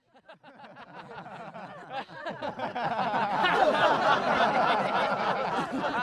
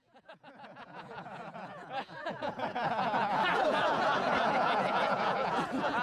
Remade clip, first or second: second